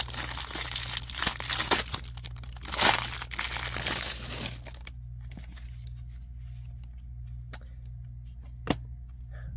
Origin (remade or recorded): recorded